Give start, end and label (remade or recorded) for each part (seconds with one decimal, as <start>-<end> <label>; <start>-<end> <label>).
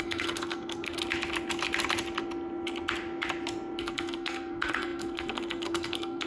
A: 0.0-1.0 remade; 1.0-3.8 recorded; 3.8-6.3 remade